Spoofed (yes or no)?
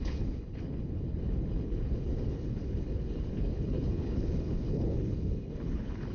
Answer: yes